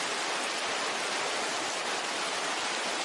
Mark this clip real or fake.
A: real